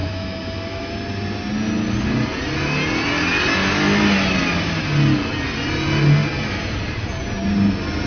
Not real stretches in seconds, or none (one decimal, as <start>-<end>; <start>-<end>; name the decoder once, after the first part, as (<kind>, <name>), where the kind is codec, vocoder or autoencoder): 0.0-0.9 (autoencoder, DAC-VAE)